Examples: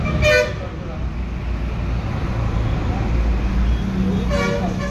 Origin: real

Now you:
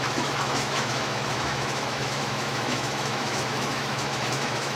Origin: fake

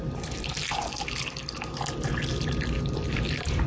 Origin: real